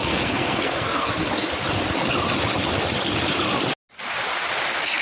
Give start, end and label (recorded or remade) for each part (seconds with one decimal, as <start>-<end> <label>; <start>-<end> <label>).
0.0-1.1 remade; 1.1-5.0 recorded